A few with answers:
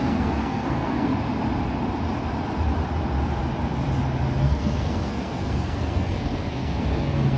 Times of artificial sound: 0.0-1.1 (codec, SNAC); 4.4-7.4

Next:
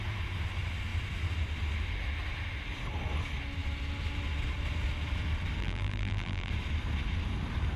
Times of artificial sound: 5.6-6.5 (vocoder, BigVGAN v2)

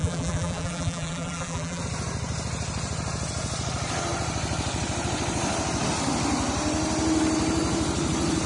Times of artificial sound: 0.0-1.8 (vocoder, BigVGAN v2)

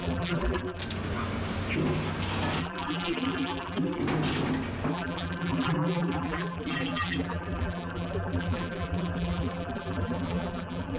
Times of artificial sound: 0.0-0.8 (vocoder, BigVGAN v2); 2.6-4.0; 4.9-11.0

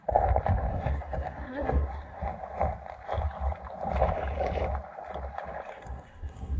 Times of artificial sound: 0.7-2.2 (codec, SNAC); 5.7-6.6

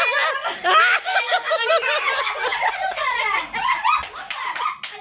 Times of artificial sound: 1.1-1.7 (codec, DAC)